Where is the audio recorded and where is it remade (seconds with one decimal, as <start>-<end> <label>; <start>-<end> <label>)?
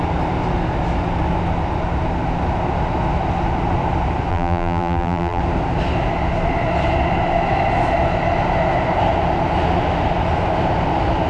0.0-4.3 recorded; 4.3-5.4 remade; 5.4-11.3 recorded